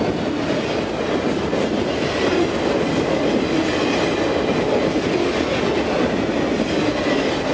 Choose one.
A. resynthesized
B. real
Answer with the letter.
B